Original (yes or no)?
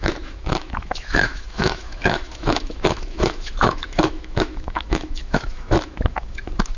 no